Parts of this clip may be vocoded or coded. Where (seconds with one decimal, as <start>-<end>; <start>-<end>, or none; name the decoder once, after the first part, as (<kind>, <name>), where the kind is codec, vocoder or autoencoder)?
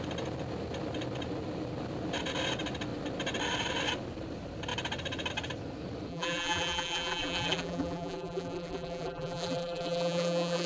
6.1-10.7 (vocoder, BigVGAN v2)